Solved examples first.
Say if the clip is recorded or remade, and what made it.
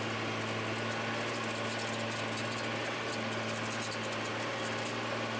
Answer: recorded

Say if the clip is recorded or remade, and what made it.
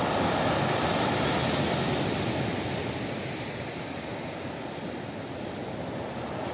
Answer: recorded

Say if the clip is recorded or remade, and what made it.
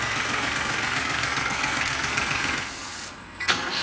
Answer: remade, codec, SNAC